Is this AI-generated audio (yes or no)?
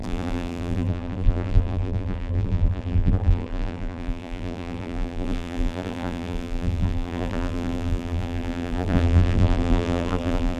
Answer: yes